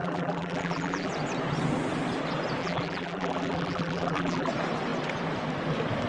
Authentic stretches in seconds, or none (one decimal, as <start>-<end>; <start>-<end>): 1.1-2.6; 4.5-6.1

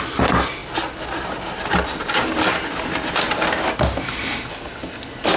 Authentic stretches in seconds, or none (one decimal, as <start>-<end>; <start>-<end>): 0.0-5.4

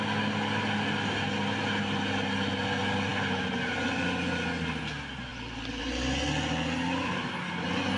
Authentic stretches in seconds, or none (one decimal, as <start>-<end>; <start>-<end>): 0.0-5.3; 5.8-8.0

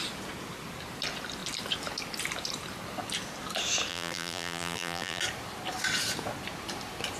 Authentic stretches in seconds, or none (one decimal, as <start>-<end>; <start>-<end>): 0.0-3.9; 5.2-7.2

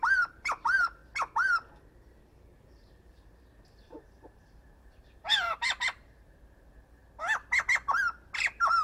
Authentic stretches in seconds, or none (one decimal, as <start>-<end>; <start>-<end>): 1.0-2.3; 7.0-8.4